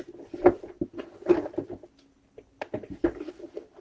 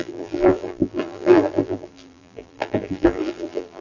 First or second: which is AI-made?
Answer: second